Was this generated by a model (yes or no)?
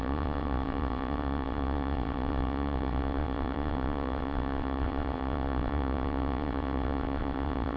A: yes